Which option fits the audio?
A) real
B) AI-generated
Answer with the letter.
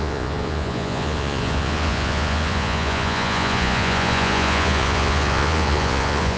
B